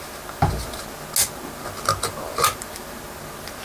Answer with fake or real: real